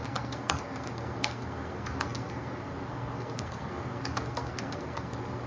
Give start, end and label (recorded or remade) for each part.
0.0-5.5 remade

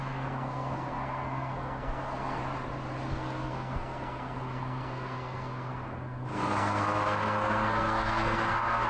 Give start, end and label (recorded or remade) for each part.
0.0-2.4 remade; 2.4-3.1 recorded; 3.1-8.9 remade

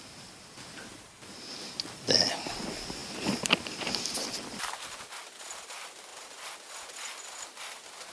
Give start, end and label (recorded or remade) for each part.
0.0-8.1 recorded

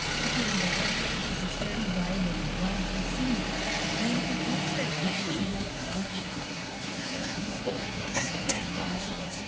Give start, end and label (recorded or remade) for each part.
0.0-4.9 recorded; 4.9-9.5 remade

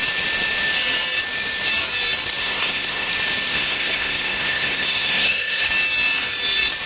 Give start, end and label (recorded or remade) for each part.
0.0-2.4 recorded; 2.4-3.1 remade; 3.1-3.5 recorded; 3.5-5.7 remade; 5.7-6.9 recorded

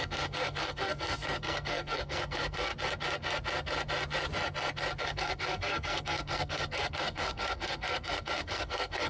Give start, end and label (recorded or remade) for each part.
0.0-2.7 remade; 2.7-5.0 recorded; 5.0-9.1 remade

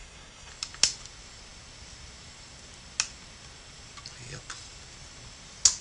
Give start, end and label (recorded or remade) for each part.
0.0-0.5 remade; 0.5-5.8 recorded

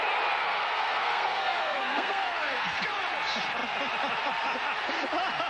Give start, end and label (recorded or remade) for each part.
0.0-0.4 recorded; 0.4-2.8 remade; 2.8-5.5 recorded